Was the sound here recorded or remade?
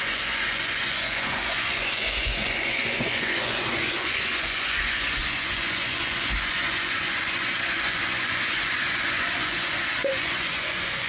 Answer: remade